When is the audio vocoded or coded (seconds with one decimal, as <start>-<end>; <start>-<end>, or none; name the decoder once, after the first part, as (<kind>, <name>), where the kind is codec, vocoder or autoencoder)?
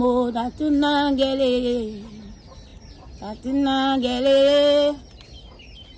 none